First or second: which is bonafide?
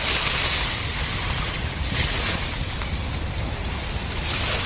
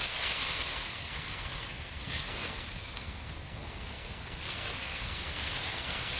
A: first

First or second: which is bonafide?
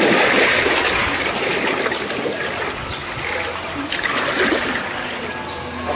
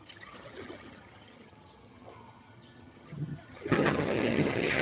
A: first